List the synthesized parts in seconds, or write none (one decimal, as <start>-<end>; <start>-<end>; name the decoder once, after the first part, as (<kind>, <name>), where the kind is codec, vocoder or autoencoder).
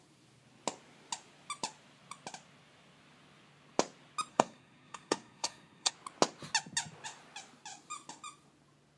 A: 4.3-5.9 (codec, SNAC)